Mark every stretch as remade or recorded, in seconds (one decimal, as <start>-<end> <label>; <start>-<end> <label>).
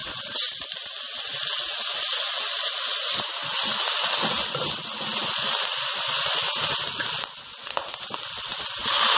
0.0-0.6 remade; 0.6-9.2 recorded